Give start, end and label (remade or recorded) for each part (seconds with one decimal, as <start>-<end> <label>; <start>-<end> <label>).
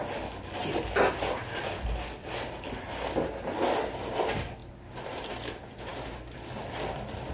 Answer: 0.0-7.3 recorded